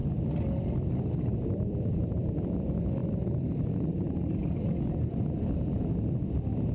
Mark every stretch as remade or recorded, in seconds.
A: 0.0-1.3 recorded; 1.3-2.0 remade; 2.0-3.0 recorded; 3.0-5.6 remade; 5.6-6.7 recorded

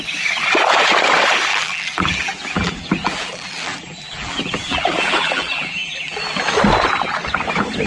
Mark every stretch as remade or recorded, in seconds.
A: 0.0-1.5 recorded; 1.5-6.2 remade; 6.2-7.9 recorded

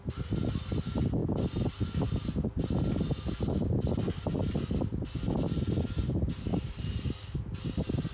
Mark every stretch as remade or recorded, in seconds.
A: 0.0-6.5 recorded; 6.5-7.4 remade; 7.4-8.1 recorded

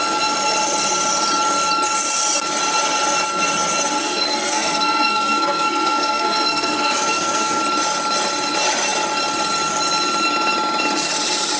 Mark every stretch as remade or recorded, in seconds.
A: 0.0-4.0 recorded; 4.0-7.6 remade; 7.6-11.6 recorded